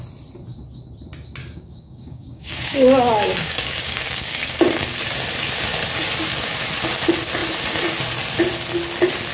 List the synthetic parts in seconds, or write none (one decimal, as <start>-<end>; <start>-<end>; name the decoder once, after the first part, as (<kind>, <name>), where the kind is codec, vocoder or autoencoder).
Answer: 1.4-4.6 (codec, DAC)

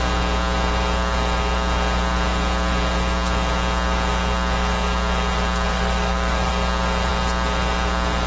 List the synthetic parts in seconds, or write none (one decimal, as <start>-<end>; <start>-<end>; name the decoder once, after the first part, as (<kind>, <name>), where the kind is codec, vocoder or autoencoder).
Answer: 5.7-6.5 (codec, DAC)

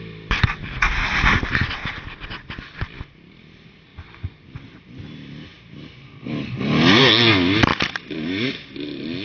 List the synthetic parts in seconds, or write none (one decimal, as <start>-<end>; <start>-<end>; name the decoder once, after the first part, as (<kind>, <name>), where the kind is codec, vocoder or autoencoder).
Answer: none

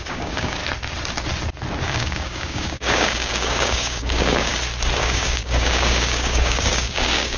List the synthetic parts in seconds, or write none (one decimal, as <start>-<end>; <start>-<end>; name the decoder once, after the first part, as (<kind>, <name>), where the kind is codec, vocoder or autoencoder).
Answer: 0.0-0.6 (codec, DAC); 1.8-4.5; 5.0-7.4

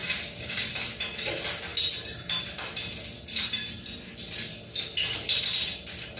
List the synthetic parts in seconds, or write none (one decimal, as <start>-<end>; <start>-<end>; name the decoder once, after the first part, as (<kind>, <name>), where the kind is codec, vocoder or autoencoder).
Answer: 0.0-0.7 (codec, DAC)

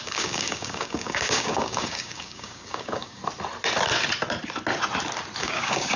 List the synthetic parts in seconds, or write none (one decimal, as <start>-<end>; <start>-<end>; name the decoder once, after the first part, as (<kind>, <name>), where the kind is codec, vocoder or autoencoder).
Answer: 0.0-3.2 (codec, DAC); 5.4-6.0

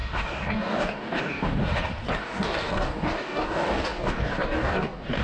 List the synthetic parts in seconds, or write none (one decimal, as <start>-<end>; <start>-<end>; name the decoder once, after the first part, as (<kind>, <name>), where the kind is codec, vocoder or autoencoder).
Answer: 0.0-1.6 (codec, DAC); 2.2-5.2

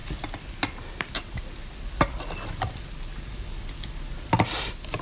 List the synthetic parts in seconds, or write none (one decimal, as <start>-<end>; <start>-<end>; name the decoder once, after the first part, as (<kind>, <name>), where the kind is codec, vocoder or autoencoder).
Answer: none